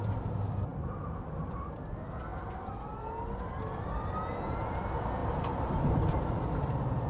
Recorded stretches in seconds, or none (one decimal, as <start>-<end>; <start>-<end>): 0.0-0.7; 1.4-5.2